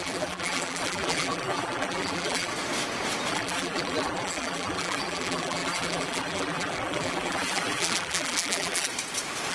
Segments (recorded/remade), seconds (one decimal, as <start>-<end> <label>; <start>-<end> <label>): 0.0-2.5 remade; 2.5-3.3 recorded; 3.3-8.9 remade; 8.9-9.5 recorded